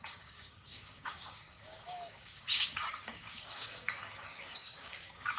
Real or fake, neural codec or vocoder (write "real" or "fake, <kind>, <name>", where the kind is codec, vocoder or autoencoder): fake, codec, DAC